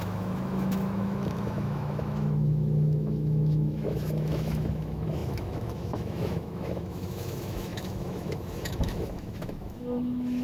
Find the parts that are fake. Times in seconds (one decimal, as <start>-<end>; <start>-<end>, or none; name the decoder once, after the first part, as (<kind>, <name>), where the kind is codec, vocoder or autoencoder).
0.0-10.4 (autoencoder, DAC-VAE)